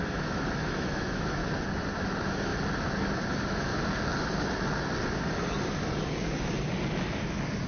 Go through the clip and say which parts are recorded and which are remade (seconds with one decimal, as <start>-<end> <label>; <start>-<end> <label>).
0.0-1.4 remade; 1.4-2.1 recorded; 2.1-2.5 remade; 2.5-3.3 recorded; 3.3-3.7 remade; 3.7-7.7 recorded